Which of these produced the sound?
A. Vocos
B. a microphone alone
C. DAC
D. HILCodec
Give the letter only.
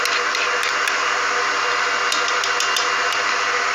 B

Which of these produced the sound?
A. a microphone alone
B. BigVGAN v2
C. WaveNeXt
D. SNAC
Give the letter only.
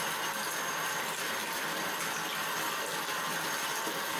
A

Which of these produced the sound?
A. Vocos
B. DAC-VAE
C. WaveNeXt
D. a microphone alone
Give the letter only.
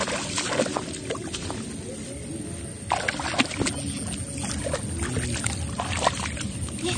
D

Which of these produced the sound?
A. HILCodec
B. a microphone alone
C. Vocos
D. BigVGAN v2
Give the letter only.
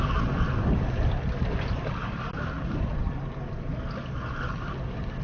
B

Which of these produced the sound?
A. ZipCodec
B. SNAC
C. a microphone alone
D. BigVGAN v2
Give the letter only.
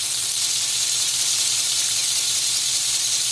D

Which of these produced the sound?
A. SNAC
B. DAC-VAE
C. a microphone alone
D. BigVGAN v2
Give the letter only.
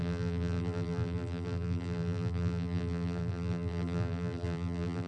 D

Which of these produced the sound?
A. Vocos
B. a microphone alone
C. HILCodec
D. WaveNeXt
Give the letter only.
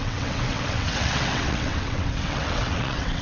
D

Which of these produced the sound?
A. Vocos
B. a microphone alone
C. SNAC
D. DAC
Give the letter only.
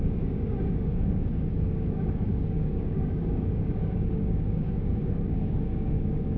D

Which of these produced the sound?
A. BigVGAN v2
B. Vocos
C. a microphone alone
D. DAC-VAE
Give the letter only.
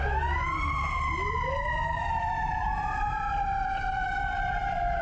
A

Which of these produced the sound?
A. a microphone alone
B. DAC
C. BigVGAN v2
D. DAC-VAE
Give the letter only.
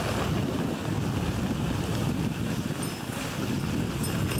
A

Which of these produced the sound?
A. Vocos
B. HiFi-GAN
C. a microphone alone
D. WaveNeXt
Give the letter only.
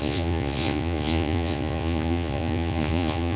A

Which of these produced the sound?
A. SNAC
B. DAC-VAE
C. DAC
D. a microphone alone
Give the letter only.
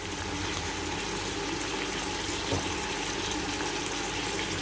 D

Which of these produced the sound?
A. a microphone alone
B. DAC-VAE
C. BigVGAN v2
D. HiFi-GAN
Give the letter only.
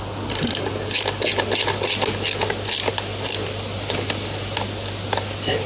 A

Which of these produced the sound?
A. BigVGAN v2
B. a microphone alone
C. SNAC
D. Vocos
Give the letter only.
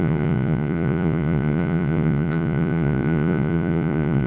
D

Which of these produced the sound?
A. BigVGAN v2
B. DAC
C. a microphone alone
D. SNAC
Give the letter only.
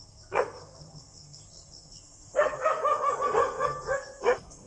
D